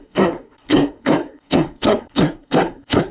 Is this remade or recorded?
remade